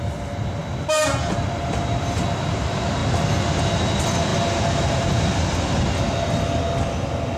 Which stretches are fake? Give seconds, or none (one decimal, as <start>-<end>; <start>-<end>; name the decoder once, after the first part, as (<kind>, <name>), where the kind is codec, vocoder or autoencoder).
none